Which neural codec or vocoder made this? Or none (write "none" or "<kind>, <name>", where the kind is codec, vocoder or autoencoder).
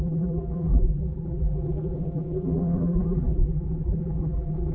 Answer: vocoder, BigVGAN v2